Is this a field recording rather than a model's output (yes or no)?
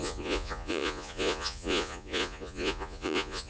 no